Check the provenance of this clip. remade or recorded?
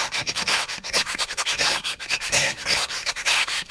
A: remade